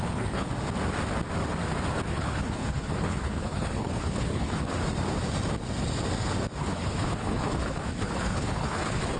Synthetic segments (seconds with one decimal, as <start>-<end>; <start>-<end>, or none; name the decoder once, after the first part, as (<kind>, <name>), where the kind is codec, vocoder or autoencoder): 0.0-0.5 (codec, HILCodec); 2.1-4.8; 6.6-9.2